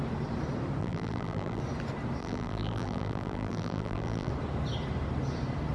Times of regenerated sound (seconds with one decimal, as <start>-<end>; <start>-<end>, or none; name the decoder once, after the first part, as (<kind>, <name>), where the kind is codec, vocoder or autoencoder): 0.8-1.6 (vocoder, BigVGAN v2); 2.2-4.3